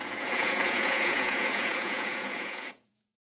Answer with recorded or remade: remade